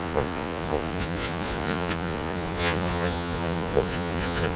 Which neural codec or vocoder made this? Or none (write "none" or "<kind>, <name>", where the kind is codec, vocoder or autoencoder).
vocoder, Vocos